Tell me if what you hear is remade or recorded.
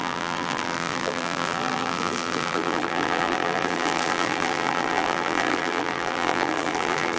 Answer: remade